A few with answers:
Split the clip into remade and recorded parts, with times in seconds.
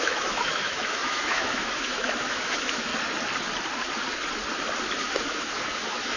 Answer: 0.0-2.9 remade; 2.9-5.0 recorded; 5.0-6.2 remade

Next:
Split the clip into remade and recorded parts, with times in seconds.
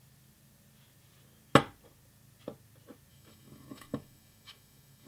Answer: 0.0-3.1 recorded; 3.1-5.1 remade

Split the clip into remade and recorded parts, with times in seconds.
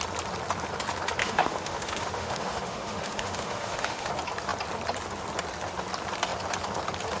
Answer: 0.0-1.2 recorded; 1.2-4.1 remade; 4.1-7.2 recorded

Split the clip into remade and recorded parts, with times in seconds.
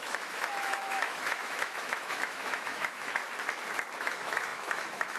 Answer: 0.0-3.2 remade; 3.2-4.0 recorded; 4.0-5.2 remade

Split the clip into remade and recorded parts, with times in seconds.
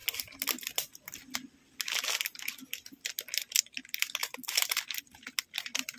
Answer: 0.0-6.0 recorded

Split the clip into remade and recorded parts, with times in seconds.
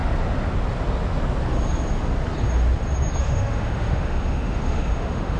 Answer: 0.0-3.2 recorded; 3.2-5.4 remade